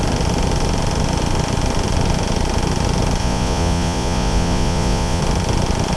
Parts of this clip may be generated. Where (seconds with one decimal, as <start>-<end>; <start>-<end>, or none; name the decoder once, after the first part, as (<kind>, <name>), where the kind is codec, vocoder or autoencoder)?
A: 3.2-5.2 (vocoder, Vocos)